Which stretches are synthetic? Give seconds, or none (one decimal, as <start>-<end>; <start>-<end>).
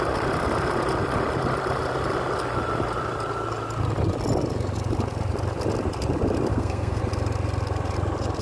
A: 6.5-7.0